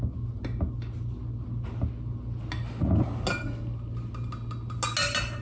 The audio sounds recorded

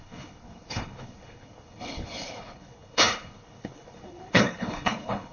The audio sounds remade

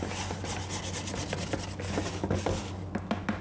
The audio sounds recorded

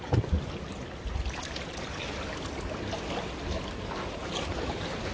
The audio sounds recorded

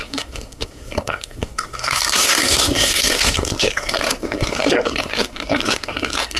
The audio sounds remade